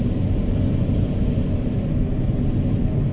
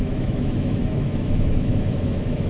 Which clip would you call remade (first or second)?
second